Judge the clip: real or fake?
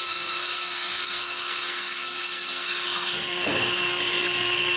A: fake